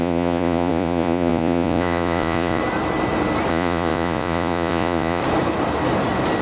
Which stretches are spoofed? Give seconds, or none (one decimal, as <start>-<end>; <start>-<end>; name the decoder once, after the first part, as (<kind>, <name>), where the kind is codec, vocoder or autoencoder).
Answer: 0.0-2.6 (vocoder, Vocos); 3.5-5.2